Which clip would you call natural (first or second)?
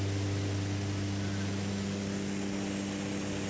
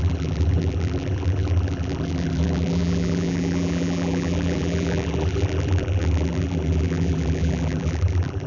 first